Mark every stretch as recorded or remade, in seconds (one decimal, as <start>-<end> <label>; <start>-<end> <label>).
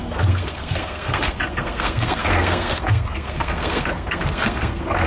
0.0-5.1 remade